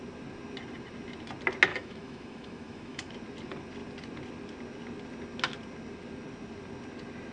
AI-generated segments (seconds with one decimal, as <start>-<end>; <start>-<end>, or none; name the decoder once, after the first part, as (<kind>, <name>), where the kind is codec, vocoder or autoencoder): 1.7-3.1 (autoencoder, DAC-VAE)